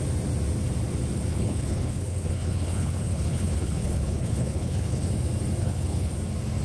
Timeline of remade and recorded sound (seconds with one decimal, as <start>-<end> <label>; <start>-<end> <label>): 0.0-1.3 recorded; 1.3-5.1 remade; 5.1-5.6 recorded; 5.6-6.1 remade; 6.1-6.6 recorded